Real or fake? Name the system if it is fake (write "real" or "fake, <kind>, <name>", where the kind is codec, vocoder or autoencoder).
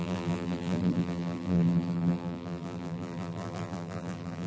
fake, vocoder, BigVGAN v2